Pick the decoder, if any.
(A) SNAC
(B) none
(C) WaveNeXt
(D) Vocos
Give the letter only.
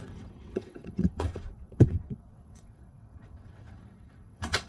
C